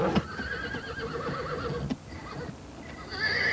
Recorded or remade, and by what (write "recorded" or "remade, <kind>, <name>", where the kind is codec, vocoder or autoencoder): recorded